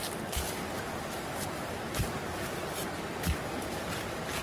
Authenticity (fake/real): real